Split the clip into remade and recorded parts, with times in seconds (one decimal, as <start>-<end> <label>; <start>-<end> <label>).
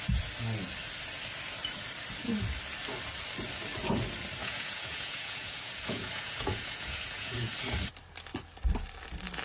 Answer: 0.0-4.4 recorded; 4.4-7.5 remade; 7.5-9.4 recorded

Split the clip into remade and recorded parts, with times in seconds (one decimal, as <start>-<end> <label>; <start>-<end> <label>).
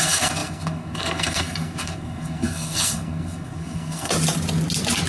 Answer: 0.0-4.1 remade; 4.1-5.1 recorded